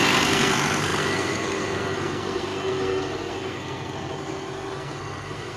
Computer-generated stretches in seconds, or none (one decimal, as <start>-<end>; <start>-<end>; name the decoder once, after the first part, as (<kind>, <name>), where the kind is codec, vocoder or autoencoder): 0.0-5.6 (codec, SNAC)